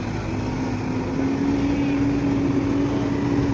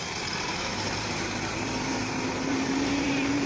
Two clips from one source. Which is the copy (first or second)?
second